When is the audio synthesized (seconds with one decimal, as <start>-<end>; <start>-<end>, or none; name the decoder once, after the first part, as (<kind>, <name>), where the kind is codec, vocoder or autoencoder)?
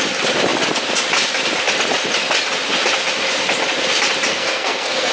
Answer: 4.3-5.1 (codec, SNAC)